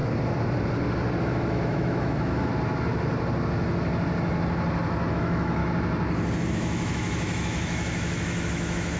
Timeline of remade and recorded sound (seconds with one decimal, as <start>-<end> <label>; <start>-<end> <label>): 0.0-1.2 recorded; 1.2-2.5 remade; 2.5-5.1 recorded; 5.1-5.6 remade; 5.6-6.5 recorded; 6.5-9.0 remade

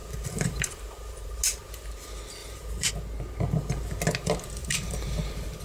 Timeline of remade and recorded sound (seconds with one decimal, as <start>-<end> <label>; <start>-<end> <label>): 0.0-1.3 remade; 1.3-2.4 recorded; 2.4-2.9 remade; 2.9-4.6 recorded; 4.6-5.6 remade

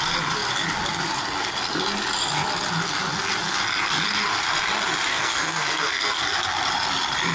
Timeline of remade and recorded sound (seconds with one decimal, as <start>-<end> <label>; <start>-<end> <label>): 0.0-5.1 recorded; 5.1-6.2 remade; 6.2-7.3 recorded

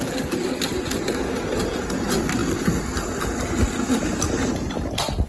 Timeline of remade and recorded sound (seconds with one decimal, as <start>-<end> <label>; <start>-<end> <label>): 0.0-5.3 recorded

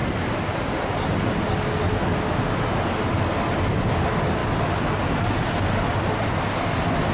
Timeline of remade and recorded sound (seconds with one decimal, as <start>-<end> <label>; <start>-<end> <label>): 0.0-7.1 recorded

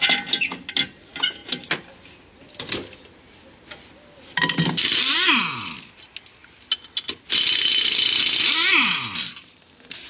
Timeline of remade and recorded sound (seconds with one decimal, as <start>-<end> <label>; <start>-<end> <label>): 0.0-10.1 recorded

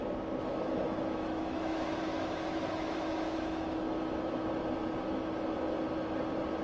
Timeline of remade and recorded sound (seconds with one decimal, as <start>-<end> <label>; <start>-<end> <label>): 0.0-0.5 recorded; 0.5-4.5 remade; 4.5-6.6 recorded